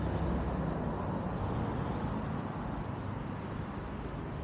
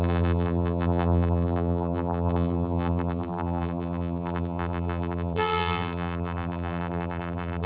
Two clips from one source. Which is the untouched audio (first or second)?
first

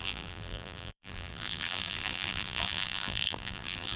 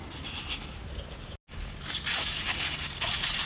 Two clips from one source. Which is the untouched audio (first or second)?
second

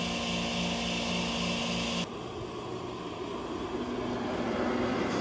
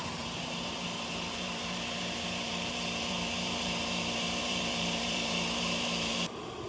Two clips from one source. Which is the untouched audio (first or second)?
first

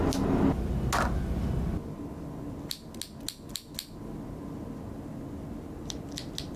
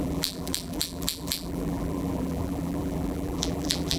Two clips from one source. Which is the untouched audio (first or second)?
first